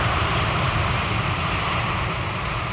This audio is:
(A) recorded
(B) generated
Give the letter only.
B